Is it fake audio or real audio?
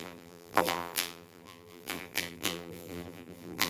fake